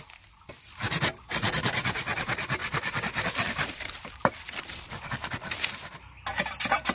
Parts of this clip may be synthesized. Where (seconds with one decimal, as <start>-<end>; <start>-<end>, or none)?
2.6-5.0